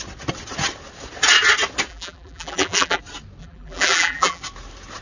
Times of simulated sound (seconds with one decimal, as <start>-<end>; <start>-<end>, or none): 1.9-3.0; 3.4-4.4